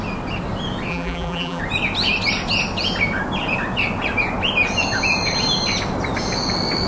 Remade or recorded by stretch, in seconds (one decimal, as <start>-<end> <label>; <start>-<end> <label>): 0.0-0.9 recorded; 0.9-1.6 remade; 1.6-6.9 recorded